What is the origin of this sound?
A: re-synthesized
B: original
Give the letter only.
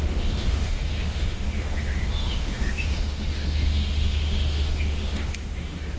A